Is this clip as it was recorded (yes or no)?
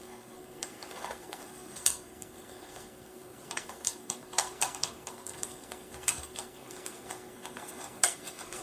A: no